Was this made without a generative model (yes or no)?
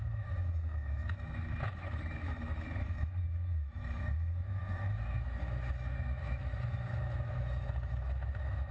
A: no